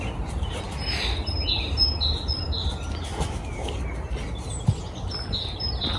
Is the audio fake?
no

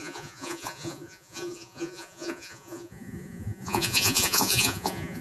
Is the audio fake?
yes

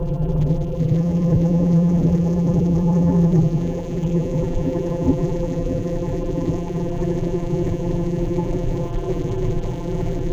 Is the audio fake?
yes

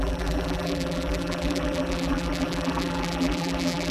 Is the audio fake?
yes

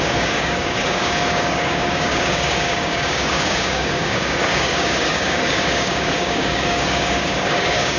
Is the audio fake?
yes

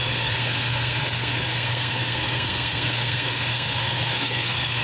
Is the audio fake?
yes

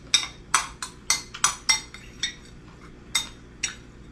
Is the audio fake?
no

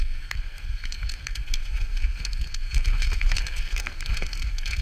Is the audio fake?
yes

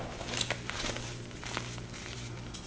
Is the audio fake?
no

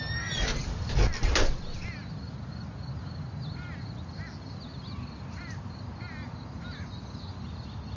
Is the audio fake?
no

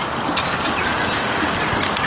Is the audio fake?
no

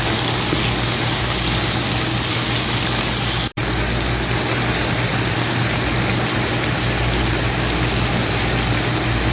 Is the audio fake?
no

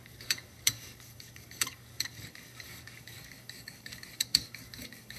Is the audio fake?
yes